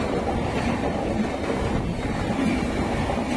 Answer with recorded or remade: recorded